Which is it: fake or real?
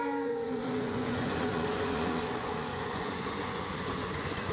fake